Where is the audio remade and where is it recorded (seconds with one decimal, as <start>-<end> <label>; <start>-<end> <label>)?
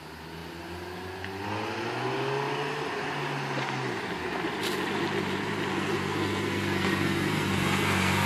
0.0-5.7 recorded; 5.7-8.3 remade